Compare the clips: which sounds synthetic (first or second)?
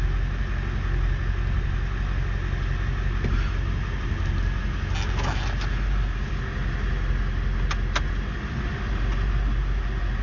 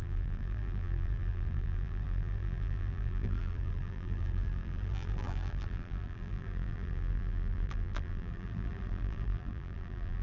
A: second